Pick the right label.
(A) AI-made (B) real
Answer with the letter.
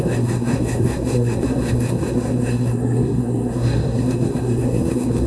A